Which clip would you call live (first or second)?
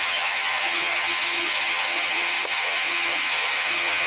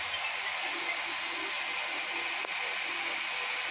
second